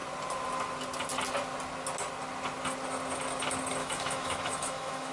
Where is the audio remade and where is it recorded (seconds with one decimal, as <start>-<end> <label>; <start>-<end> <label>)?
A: 0.0-3.8 recorded; 3.8-5.1 remade